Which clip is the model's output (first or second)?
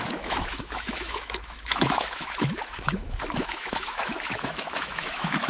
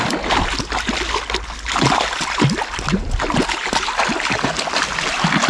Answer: first